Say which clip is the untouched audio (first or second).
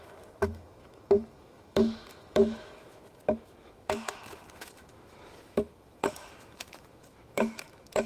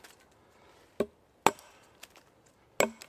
second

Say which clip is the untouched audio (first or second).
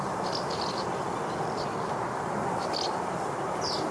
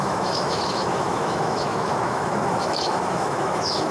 first